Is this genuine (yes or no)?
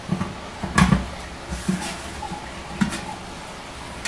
yes